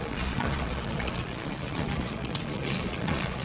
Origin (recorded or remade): remade